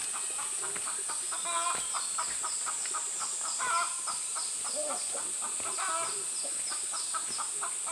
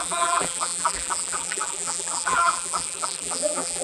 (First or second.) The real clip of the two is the first